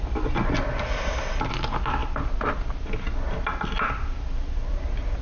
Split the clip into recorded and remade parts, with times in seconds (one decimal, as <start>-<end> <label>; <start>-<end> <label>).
0.0-5.2 recorded